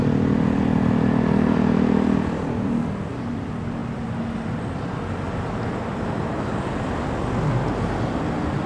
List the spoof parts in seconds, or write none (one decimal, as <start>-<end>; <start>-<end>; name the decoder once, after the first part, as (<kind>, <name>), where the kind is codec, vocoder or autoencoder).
none